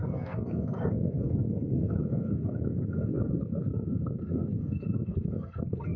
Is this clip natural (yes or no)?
no